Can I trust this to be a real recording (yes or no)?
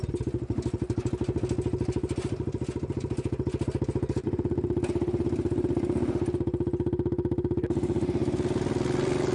yes